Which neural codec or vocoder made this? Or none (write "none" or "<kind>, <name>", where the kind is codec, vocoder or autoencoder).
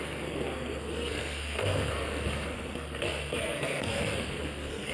codec, SNAC